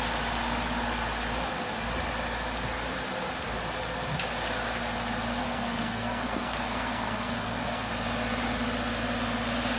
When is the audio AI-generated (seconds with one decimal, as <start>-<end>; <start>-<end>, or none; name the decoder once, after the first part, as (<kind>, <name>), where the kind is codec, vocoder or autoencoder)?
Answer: 5.4-7.9 (codec, SNAC)